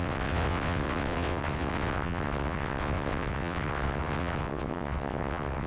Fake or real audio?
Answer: fake